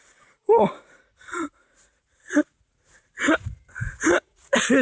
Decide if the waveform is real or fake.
fake